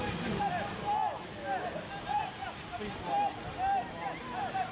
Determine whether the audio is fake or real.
real